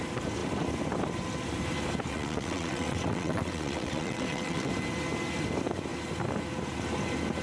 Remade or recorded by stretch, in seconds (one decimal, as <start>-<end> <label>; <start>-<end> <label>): 0.0-2.1 recorded; 2.1-4.7 remade; 4.7-7.4 recorded